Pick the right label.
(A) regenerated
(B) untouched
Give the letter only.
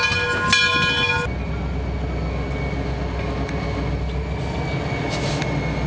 B